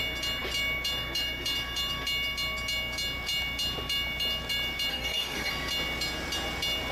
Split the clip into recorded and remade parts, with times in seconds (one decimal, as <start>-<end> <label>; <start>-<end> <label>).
0.0-4.9 recorded; 4.9-5.5 remade; 5.5-6.9 recorded